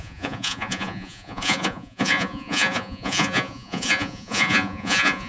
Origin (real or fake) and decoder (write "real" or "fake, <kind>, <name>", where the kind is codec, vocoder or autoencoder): fake, vocoder, Vocos